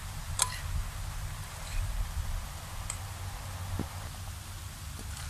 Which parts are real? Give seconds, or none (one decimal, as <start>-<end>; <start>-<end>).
0.0-5.3